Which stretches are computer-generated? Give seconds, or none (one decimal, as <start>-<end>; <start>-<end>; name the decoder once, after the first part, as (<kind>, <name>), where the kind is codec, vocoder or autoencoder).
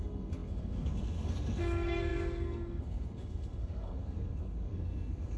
0.0-5.4 (codec, SNAC)